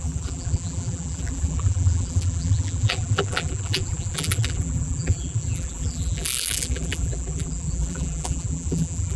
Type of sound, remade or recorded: remade